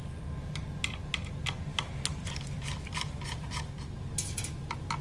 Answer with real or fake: real